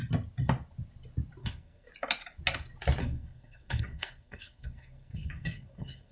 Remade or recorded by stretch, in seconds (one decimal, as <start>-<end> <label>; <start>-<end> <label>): 0.0-1.4 recorded; 1.4-1.9 remade; 1.9-3.0 recorded; 3.0-6.1 remade